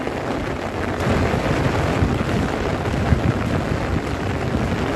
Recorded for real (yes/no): yes